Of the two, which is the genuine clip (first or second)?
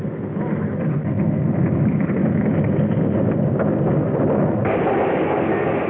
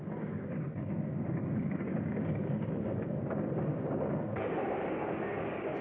first